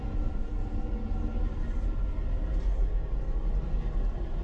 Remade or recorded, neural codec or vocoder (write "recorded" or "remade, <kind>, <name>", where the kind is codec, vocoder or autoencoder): recorded